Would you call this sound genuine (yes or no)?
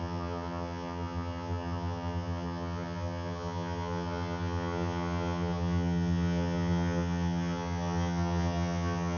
no